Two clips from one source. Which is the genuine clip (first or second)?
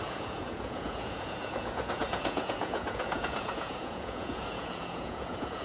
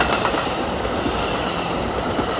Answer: second